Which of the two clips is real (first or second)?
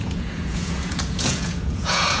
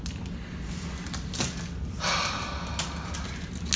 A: second